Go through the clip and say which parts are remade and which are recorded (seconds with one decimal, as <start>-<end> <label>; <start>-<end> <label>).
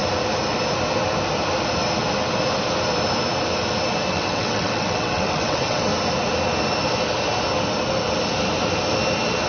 0.0-4.1 recorded; 4.1-5.9 remade; 5.9-9.5 recorded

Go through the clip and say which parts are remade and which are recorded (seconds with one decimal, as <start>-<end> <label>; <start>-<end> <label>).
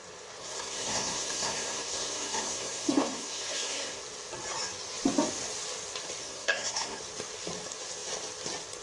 0.0-0.4 recorded; 0.4-4.0 remade; 4.0-6.2 recorded; 6.2-7.0 remade; 7.0-8.8 recorded